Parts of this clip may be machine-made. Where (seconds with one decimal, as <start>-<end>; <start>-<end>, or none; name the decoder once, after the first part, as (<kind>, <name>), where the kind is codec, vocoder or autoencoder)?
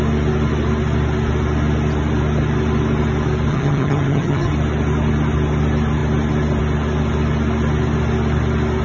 3.5-4.5 (vocoder, HiFi-GAN)